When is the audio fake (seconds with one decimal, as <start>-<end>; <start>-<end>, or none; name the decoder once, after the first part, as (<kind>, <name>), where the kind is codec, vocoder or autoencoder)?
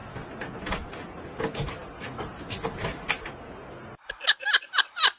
none